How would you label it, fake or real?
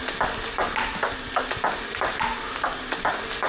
real